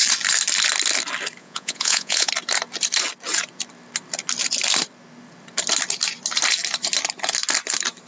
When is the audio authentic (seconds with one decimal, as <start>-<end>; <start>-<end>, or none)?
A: 0.0-1.4; 2.3-8.1